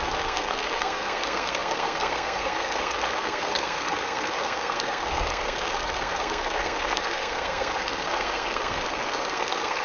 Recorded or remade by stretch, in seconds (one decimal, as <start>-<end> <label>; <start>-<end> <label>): 0.0-9.8 remade